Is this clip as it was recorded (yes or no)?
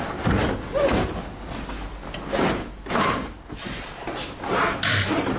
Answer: yes